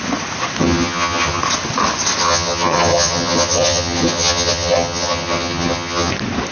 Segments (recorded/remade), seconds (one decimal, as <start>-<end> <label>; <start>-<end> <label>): 0.0-0.6 recorded; 0.6-1.4 remade; 1.4-2.2 recorded; 2.2-6.1 remade; 6.1-6.5 recorded